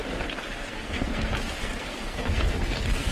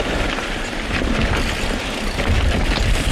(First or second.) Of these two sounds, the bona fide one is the second